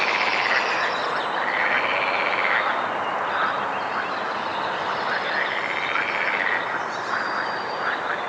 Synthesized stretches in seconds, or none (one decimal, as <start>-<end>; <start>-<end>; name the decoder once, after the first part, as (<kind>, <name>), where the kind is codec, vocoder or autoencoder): none